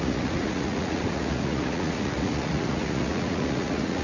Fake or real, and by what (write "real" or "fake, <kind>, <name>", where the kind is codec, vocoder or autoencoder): fake, vocoder, Vocos